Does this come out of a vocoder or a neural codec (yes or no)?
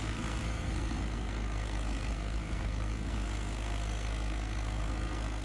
yes